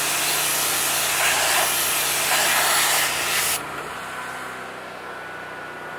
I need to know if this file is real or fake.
real